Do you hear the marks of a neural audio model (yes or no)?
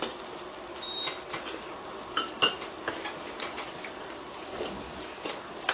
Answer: no